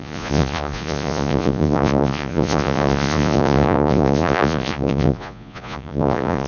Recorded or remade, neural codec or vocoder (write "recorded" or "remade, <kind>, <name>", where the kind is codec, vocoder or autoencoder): remade, vocoder, Vocos